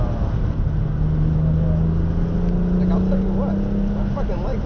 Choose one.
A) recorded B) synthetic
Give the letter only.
A